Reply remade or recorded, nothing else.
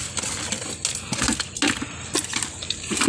recorded